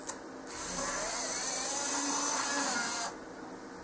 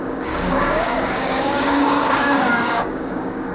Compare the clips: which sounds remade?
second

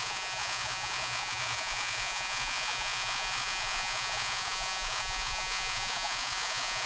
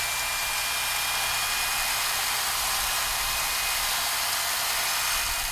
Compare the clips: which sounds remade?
first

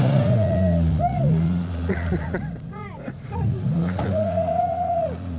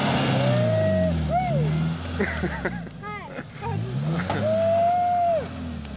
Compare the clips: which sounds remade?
first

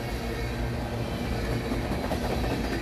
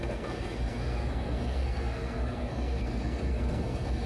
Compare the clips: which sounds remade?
second